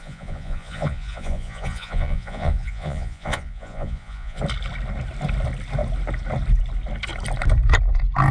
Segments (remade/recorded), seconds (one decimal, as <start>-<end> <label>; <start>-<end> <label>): 0.0-4.4 remade; 4.4-8.3 recorded